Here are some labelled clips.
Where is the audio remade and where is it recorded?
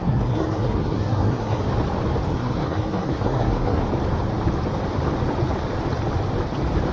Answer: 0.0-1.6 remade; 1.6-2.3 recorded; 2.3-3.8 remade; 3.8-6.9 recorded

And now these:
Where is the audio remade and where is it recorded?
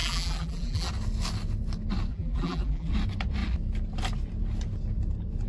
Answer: 0.0-0.9 remade; 0.9-2.1 recorded; 2.1-2.9 remade; 2.9-5.5 recorded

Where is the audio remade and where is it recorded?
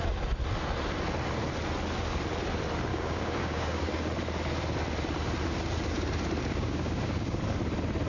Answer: 0.0-2.9 recorded; 2.9-3.8 remade; 3.8-6.4 recorded; 6.4-7.4 remade; 7.4-8.1 recorded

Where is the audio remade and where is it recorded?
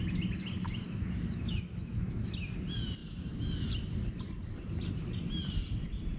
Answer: 0.0-0.8 recorded; 0.8-2.3 remade; 2.3-6.2 recorded